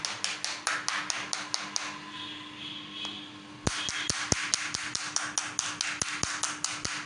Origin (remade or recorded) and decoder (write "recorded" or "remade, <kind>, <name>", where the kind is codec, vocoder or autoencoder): recorded